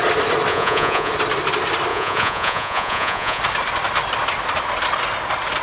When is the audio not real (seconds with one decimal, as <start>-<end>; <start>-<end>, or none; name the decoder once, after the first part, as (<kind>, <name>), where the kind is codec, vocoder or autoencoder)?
0.5-1.1 (vocoder, Vocos); 1.9-3.4